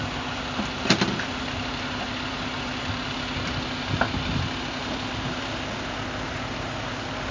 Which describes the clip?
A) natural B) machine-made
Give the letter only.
A